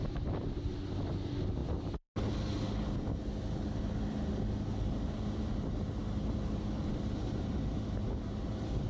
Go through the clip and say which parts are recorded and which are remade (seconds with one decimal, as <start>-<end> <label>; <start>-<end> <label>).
0.0-8.9 recorded